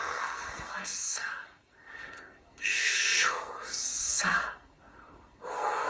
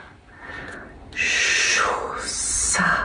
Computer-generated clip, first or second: first